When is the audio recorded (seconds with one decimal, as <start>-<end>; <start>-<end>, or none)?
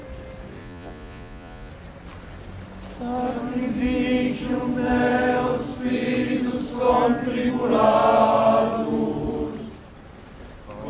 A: 0.0-0.6; 1.7-10.9